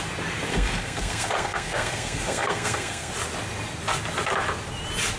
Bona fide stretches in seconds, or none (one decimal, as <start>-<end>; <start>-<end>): 0.0-0.5; 3.1-5.2